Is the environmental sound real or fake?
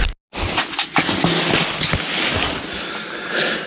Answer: real